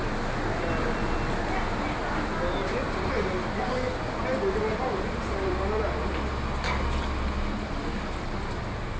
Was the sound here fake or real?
real